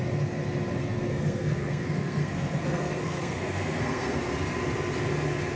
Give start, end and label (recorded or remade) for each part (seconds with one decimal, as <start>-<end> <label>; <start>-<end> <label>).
0.0-0.8 recorded; 0.8-4.2 remade; 4.2-5.6 recorded